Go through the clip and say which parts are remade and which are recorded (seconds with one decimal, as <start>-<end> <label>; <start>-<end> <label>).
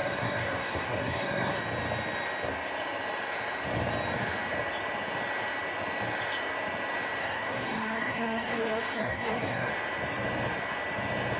0.0-1.6 remade; 1.6-7.2 recorded; 7.2-9.7 remade; 9.7-11.4 recorded